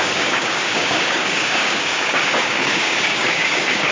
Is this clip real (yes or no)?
no